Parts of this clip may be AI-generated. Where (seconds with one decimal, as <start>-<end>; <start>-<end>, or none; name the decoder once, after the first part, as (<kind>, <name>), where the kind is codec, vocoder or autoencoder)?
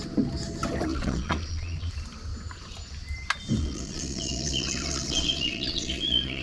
0.9-1.9 (vocoder, Vocos); 3.6-6.4